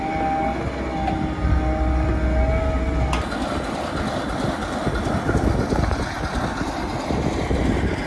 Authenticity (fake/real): real